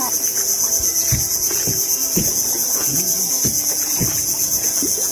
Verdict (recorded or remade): remade